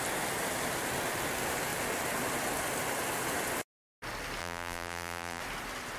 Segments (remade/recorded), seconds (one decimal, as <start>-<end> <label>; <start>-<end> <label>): 0.0-4.4 recorded; 4.4-5.4 remade; 5.4-6.0 recorded